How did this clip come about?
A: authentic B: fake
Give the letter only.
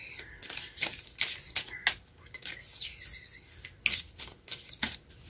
A